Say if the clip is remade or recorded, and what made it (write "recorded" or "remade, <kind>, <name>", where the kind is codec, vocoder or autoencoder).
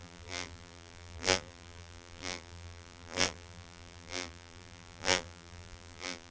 remade, vocoder, BigVGAN v2